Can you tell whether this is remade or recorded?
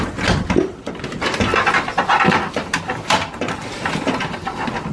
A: recorded